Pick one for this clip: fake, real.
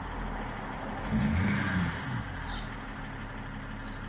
real